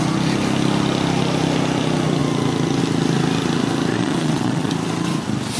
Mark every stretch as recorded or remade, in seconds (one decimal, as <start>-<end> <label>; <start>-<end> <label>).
0.0-3.9 recorded; 3.9-4.7 remade; 4.7-5.6 recorded